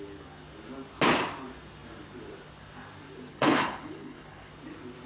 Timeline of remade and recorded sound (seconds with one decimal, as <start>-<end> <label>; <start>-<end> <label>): 0.0-3.3 recorded; 3.3-4.5 remade; 4.5-5.1 recorded